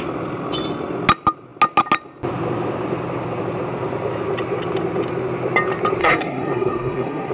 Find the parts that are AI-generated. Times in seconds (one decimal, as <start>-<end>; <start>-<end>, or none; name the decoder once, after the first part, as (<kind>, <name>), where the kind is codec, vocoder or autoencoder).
6.0-7.3 (codec, SNAC)